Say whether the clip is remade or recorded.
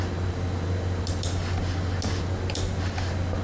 recorded